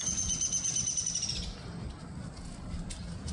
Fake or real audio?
real